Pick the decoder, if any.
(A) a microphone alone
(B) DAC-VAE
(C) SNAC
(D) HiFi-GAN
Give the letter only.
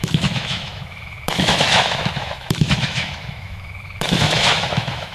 B